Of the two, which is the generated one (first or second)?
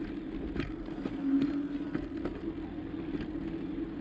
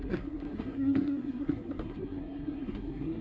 second